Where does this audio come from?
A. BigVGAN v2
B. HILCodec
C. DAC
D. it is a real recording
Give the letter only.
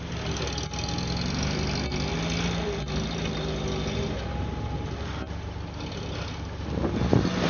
D